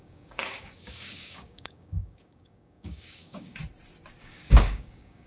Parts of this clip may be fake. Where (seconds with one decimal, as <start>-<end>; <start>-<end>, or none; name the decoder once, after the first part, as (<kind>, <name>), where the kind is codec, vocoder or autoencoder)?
0.0-3.6 (codec, DAC); 4.2-5.3